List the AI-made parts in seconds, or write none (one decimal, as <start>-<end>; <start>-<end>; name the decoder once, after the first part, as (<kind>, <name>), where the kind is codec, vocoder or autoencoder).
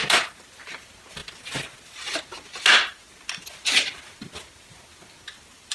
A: none